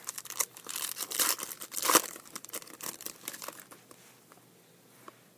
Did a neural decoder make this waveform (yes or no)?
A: yes